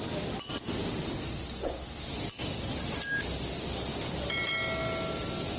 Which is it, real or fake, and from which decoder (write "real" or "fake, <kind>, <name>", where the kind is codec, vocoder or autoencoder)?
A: real